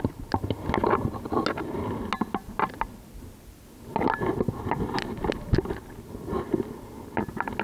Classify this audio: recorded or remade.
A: recorded